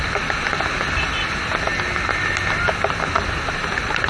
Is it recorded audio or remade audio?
recorded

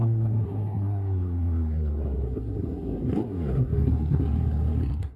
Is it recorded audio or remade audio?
remade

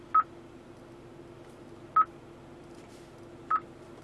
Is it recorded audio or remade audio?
recorded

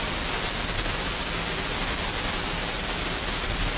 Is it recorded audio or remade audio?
recorded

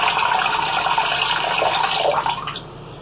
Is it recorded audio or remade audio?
recorded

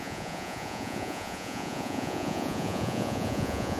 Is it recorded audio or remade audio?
remade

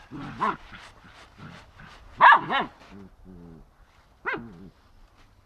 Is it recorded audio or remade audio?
recorded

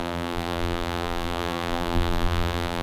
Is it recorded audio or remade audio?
remade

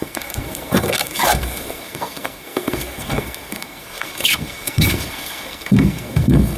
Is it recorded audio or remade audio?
remade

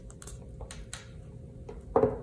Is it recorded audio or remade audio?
recorded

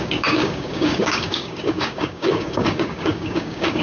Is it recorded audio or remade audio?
remade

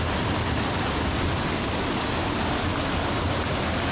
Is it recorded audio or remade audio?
recorded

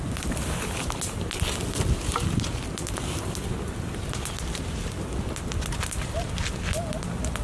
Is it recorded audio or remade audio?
recorded